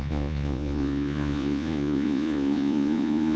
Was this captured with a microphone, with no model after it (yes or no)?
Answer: no